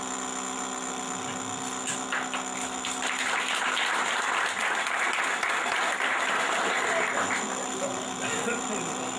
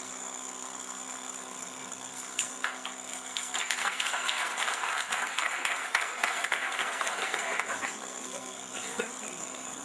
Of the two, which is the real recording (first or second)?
first